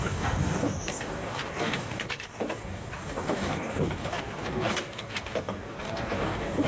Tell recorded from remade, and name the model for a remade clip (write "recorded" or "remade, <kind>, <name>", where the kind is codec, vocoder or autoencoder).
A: remade, codec, DAC